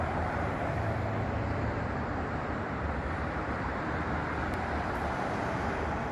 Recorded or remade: remade